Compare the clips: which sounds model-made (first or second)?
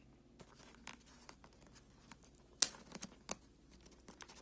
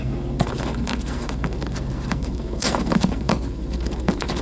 second